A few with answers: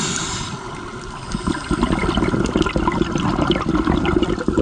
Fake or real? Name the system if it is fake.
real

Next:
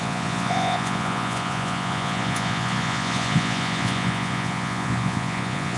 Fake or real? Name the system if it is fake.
fake, vocoder, Vocos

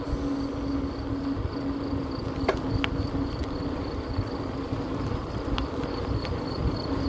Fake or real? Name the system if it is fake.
real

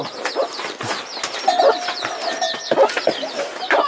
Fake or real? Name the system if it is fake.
real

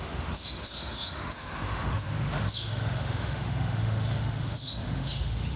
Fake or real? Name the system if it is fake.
fake, autoencoder, DAC-VAE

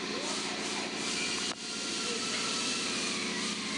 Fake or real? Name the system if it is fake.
real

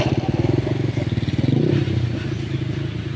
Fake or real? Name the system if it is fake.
real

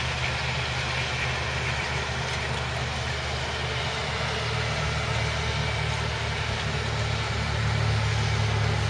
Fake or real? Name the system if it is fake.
real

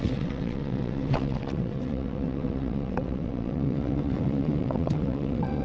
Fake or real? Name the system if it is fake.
fake, vocoder, WaveNeXt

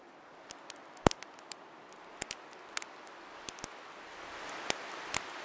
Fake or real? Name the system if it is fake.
real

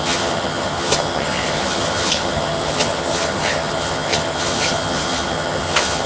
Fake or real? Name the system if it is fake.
fake, vocoder, HiFi-GAN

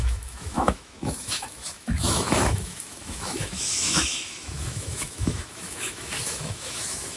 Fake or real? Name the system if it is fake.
fake, autoencoder, DAC-VAE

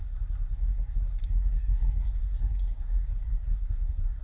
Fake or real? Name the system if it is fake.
fake, codec, SNAC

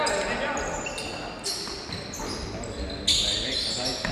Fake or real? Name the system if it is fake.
real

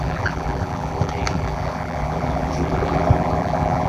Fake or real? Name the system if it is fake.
fake, vocoder, BigVGAN v2